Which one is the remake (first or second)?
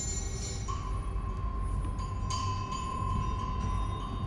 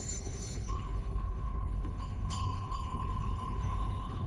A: second